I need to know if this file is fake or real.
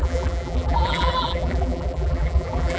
fake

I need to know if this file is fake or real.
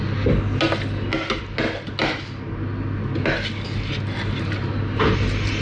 real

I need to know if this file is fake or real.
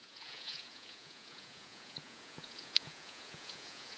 fake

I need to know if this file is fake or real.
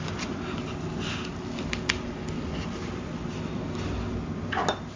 real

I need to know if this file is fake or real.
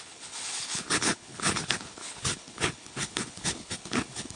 fake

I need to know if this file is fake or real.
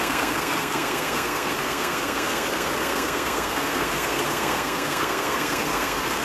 fake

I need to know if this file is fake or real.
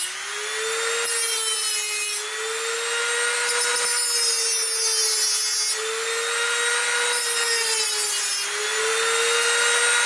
real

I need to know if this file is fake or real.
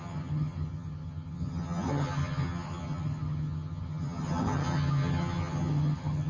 fake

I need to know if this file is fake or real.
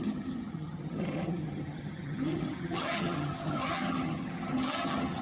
fake